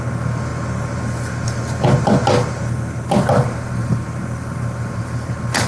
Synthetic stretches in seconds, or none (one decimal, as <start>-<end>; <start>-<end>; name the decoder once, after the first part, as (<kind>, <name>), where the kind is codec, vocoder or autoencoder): 3.8-5.3 (vocoder, BigVGAN v2)